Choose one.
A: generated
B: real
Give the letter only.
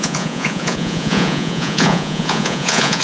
A